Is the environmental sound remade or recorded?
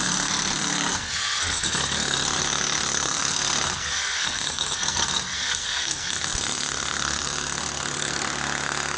remade